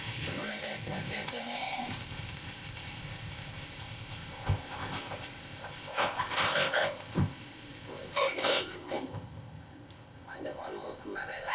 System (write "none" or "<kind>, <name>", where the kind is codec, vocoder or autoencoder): codec, ZipCodec